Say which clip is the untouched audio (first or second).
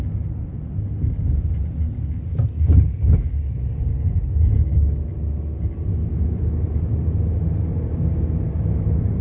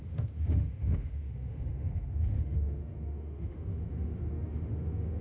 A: first